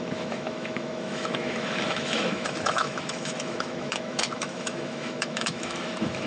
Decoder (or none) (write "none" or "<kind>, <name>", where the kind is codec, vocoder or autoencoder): autoencoder, DAC-VAE